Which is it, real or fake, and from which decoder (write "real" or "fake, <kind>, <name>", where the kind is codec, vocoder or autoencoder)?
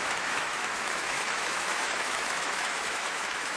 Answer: fake, autoencoder, DAC-VAE